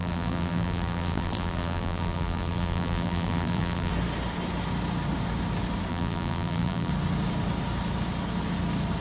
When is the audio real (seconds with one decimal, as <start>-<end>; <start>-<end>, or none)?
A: 3.9-5.9; 6.9-9.0